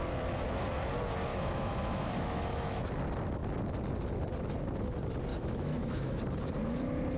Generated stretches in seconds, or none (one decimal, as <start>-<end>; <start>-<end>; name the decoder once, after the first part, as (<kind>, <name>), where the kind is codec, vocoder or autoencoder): 1.3-2.8 (autoencoder, DAC-VAE); 5.3-6.2